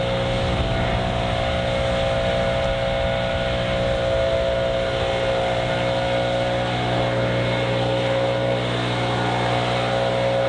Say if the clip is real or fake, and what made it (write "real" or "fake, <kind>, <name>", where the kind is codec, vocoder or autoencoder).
real